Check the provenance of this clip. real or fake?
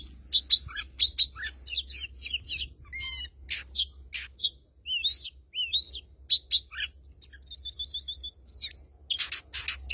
real